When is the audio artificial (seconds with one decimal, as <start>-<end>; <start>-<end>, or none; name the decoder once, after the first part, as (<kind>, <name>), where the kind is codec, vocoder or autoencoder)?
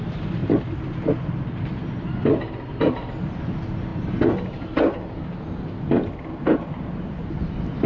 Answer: none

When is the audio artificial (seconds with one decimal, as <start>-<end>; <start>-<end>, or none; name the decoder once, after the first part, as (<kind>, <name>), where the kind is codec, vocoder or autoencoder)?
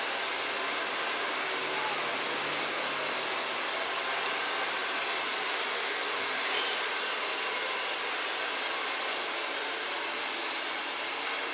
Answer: none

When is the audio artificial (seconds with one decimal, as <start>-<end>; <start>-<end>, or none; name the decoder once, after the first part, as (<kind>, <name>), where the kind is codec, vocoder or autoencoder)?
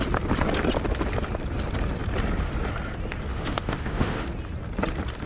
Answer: 3.3-4.3 (autoencoder, DAC-VAE)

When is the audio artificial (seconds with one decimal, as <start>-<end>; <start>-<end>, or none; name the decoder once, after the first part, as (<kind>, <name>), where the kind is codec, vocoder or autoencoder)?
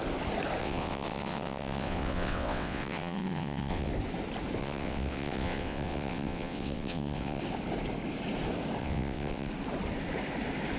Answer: 0.6-3.9 (vocoder, WaveNeXt); 4.6-7.4; 8.8-9.5